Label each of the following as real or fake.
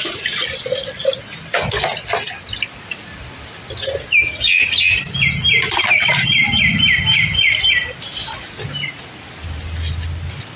real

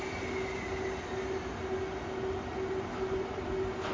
real